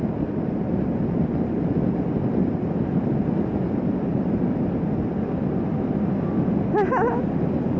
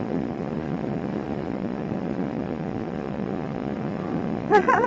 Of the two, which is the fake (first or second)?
second